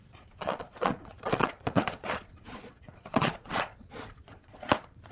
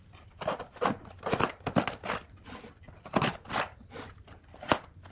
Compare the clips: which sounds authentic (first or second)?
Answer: second